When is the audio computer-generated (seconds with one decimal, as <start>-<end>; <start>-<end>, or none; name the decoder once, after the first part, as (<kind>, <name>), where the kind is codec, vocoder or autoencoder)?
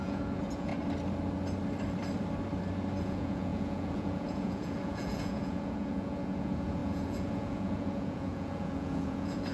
0.0-0.7 (vocoder, Vocos); 3.0-9.5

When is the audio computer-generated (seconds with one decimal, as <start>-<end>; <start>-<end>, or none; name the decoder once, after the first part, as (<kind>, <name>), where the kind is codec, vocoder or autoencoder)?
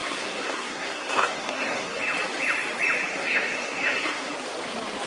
0.0-2.0 (codec, SNAC); 3.1-4.3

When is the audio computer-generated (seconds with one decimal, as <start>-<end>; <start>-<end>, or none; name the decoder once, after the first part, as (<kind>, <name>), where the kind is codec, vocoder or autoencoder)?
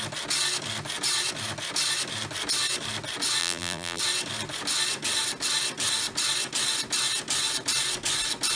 3.4-4.0 (vocoder, BigVGAN v2)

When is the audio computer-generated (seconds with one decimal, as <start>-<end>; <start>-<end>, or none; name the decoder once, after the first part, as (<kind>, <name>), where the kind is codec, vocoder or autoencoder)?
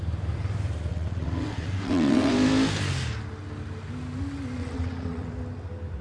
0.9-2.3 (vocoder, WaveNeXt); 4.6-5.3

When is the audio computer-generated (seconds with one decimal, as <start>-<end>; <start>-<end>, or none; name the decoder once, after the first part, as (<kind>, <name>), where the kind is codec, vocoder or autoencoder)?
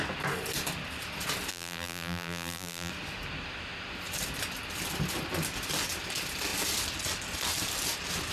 1.5-2.9 (vocoder, BigVGAN v2)